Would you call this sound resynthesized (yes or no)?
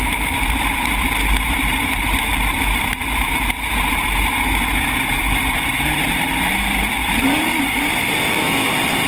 yes